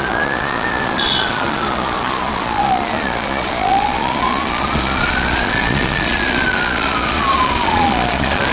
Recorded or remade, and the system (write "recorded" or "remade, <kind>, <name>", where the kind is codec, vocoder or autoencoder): remade, vocoder, Vocos